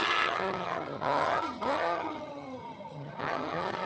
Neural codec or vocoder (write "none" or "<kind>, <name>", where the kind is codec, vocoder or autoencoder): vocoder, HiFi-GAN